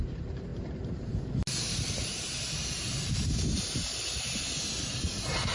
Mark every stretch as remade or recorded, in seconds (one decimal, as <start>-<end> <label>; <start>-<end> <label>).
0.0-5.5 recorded